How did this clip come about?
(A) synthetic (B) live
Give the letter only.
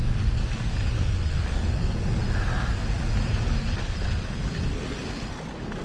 B